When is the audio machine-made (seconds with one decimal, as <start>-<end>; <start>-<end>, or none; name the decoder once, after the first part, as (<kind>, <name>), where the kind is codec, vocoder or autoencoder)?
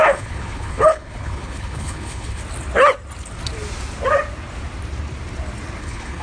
0.0-2.4 (codec, HILCodec); 5.8-6.2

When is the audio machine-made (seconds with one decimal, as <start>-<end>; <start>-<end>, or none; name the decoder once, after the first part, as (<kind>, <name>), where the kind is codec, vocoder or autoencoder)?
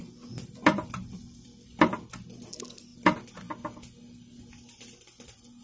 0.0-2.2 (vocoder, BigVGAN v2)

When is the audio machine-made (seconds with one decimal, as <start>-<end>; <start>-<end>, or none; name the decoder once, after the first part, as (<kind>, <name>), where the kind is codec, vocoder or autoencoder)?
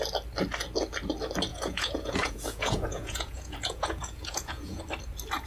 1.5-4.8 (vocoder, Vocos)